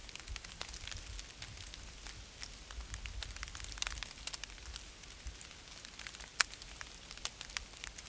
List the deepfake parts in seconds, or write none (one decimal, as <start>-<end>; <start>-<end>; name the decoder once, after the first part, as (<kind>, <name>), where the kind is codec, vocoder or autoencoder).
none